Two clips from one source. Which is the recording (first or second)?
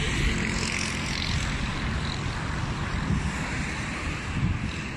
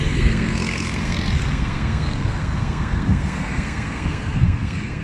first